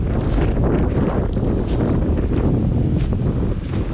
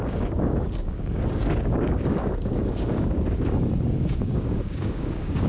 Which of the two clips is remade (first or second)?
second